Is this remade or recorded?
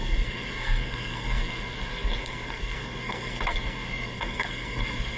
remade